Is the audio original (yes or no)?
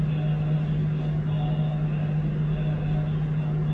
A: yes